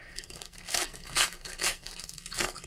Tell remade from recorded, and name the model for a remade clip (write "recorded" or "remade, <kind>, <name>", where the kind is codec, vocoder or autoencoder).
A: remade, codec, SNAC